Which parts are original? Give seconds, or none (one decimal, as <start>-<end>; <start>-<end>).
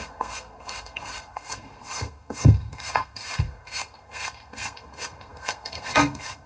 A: none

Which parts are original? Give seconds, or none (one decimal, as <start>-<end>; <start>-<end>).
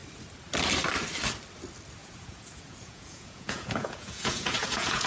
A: 0.0-2.0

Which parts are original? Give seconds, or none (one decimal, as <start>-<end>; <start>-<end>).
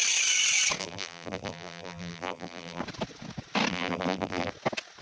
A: 0.0-0.8; 2.8-3.7; 4.5-5.0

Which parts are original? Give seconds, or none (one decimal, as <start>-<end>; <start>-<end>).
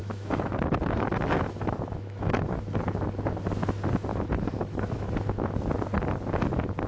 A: 2.5-4.1; 5.4-6.9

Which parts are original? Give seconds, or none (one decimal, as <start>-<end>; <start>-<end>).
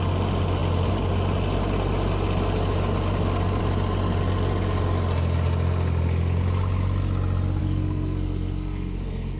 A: 0.0-7.6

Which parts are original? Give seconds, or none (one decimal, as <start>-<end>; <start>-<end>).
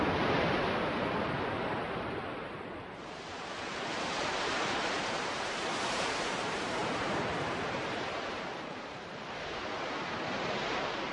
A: 9.6-11.1